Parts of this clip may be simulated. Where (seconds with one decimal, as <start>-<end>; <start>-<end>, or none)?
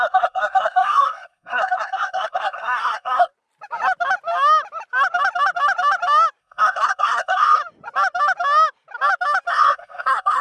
0.0-3.3; 6.4-7.6; 9.5-10.4